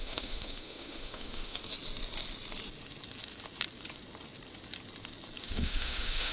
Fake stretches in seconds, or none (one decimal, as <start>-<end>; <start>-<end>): 0.0-1.6; 5.4-6.3